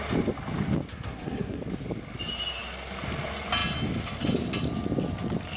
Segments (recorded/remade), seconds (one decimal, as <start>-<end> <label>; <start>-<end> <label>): 0.0-0.9 recorded; 0.9-1.6 remade; 1.6-5.6 recorded